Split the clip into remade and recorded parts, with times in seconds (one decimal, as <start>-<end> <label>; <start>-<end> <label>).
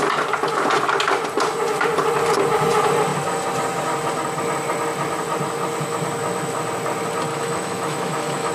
0.0-7.3 recorded; 7.3-8.5 remade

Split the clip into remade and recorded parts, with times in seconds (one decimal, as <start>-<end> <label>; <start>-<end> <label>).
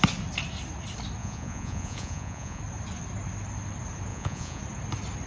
0.0-1.2 recorded; 1.2-2.6 remade; 2.6-4.1 recorded; 4.1-4.6 remade; 4.6-5.3 recorded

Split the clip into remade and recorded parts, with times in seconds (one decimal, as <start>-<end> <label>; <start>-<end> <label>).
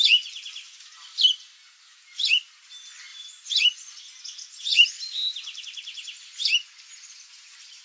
0.0-3.1 recorded; 3.1-4.0 remade; 4.0-4.7 recorded; 4.7-5.6 remade; 5.6-7.8 recorded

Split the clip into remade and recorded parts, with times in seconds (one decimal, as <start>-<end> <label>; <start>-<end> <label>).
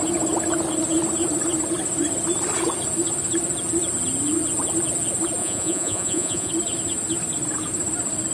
0.0-5.4 recorded; 5.4-6.5 remade; 6.5-8.3 recorded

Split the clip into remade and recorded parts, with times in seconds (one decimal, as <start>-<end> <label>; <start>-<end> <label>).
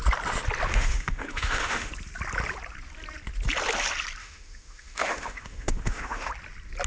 0.0-0.7 recorded; 0.7-1.9 remade; 1.9-4.2 recorded; 4.2-6.3 remade; 6.3-6.9 recorded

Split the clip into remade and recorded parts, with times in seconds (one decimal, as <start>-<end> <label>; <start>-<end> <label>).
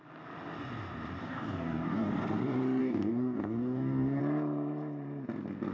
0.0-1.2 recorded; 1.2-2.2 remade; 2.2-2.8 recorded; 2.8-4.2 remade; 4.2-5.7 recorded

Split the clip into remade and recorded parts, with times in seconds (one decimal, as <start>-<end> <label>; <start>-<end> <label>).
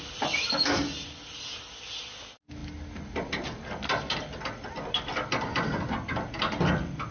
0.0-7.1 recorded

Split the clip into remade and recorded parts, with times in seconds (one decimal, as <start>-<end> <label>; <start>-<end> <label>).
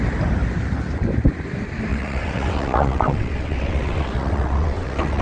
0.0-1.9 recorded; 1.9-5.2 remade